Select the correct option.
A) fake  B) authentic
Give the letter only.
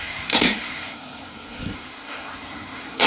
A